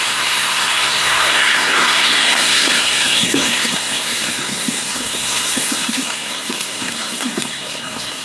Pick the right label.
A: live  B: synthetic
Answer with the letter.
B